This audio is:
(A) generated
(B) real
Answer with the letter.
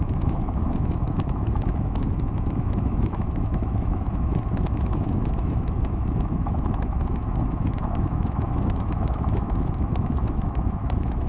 A